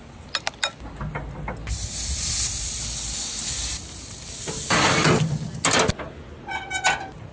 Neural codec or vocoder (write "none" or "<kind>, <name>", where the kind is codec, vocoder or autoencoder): none